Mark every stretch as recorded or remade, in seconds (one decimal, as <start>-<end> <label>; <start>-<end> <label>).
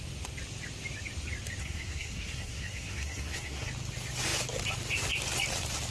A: 0.0-1.6 recorded; 1.6-3.7 remade; 3.7-5.9 recorded